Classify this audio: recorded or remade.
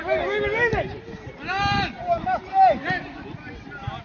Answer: recorded